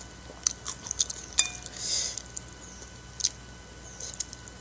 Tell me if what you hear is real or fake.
real